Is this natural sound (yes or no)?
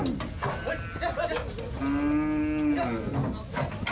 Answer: yes